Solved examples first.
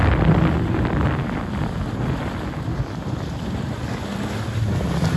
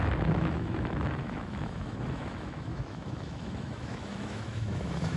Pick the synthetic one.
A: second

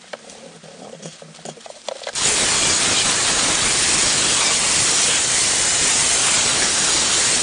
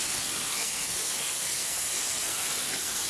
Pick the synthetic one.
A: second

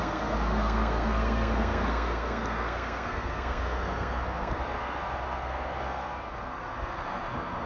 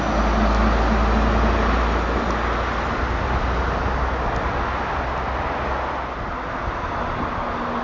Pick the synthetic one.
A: first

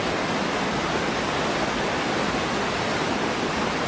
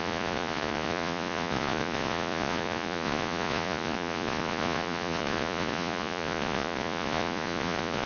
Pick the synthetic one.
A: second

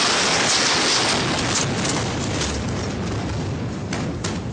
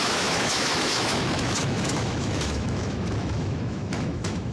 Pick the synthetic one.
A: second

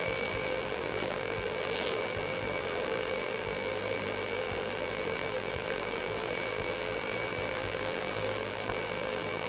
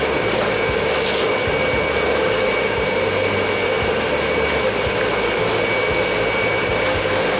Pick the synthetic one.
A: first